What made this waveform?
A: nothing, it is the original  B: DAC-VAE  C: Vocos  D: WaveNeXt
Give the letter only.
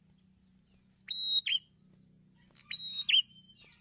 A